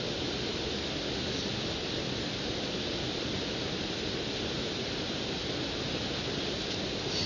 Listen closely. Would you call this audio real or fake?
real